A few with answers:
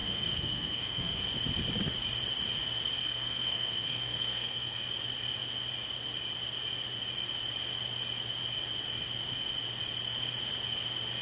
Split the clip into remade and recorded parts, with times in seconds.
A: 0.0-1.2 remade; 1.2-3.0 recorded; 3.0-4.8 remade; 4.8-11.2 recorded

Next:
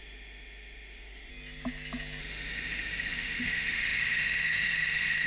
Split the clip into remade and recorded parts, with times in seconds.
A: 0.0-1.3 remade; 1.3-2.2 recorded; 2.2-5.3 remade